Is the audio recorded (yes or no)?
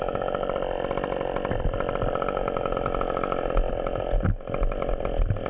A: yes